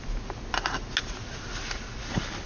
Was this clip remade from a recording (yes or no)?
no